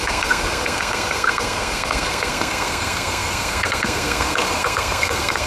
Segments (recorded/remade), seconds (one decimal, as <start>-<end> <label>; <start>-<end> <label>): 0.0-5.5 remade